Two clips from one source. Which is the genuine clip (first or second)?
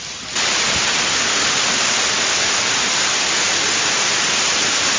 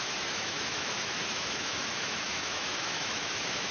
first